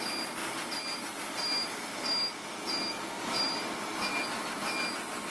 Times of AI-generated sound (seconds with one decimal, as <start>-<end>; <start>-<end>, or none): none